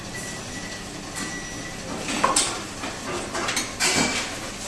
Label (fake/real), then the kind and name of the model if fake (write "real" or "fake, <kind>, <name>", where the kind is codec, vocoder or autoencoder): real